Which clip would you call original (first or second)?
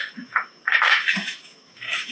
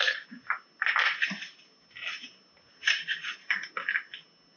second